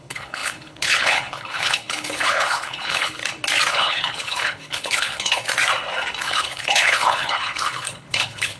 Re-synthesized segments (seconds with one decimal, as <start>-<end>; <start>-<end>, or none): 0.0-3.2; 3.7-5.4; 6.2-8.6